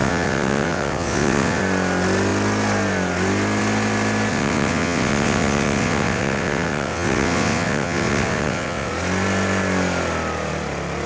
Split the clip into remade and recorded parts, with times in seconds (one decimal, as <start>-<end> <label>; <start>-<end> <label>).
0.0-1.6 remade; 1.6-4.3 recorded; 4.3-8.9 remade; 8.9-11.1 recorded